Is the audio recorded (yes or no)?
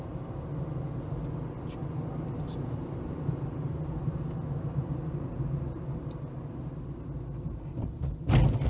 yes